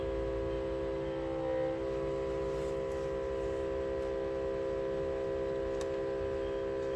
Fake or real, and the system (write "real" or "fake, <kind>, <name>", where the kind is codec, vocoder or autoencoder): real